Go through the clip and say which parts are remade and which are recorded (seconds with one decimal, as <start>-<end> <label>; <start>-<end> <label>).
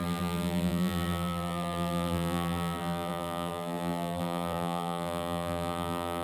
0.0-6.2 remade